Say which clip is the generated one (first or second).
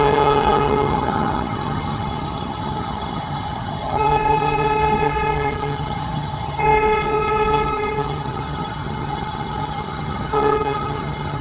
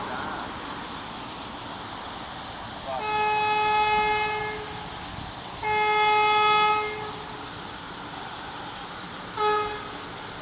first